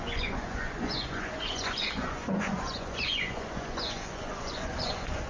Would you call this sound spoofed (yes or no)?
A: yes